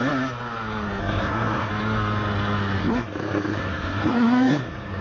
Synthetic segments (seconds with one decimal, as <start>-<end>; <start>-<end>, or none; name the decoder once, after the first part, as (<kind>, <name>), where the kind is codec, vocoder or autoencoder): 1.0-1.7 (codec, SNAC); 2.8-5.0